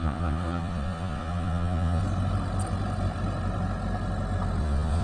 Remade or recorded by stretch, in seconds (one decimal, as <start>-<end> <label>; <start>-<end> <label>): 0.0-2.0 remade; 2.0-4.6 recorded; 4.6-5.0 remade